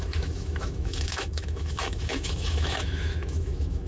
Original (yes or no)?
no